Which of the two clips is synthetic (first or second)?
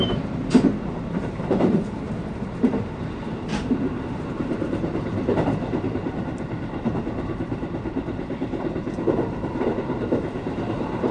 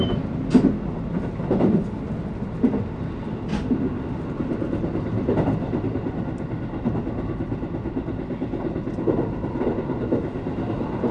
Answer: first